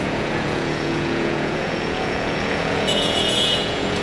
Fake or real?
fake